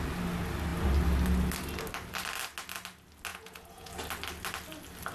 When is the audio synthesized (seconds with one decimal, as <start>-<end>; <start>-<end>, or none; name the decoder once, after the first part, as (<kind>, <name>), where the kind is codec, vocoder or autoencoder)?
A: 3.3-3.9 (vocoder, Vocos)